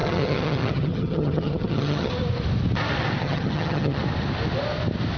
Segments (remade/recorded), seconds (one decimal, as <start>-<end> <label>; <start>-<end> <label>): 0.0-2.1 remade; 2.1-3.2 recorded; 3.2-4.0 remade; 4.0-5.2 recorded

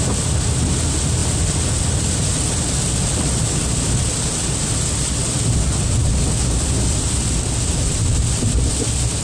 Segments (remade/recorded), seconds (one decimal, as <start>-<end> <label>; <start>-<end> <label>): 0.0-9.2 recorded

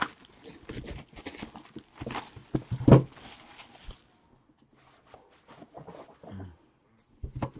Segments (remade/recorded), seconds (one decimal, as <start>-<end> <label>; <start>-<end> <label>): 0.0-2.4 recorded; 2.4-3.1 remade; 3.1-7.6 recorded

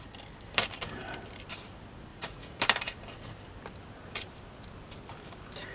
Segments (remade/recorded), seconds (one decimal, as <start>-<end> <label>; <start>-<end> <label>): 0.0-2.1 recorded; 2.1-2.6 remade; 2.6-5.7 recorded

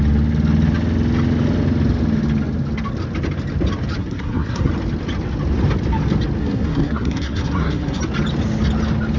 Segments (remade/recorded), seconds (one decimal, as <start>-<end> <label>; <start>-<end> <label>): 0.0-4.0 recorded; 4.0-4.7 remade; 4.7-6.4 recorded; 6.4-8.0 remade; 8.0-9.2 recorded

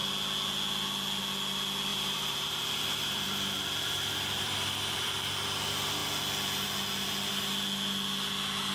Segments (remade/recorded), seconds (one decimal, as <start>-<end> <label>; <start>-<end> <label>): 0.0-1.9 recorded; 1.9-5.3 remade; 5.3-8.7 recorded